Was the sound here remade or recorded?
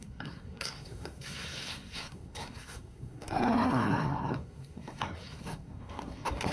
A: remade